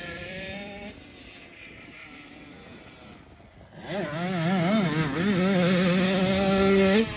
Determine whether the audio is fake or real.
real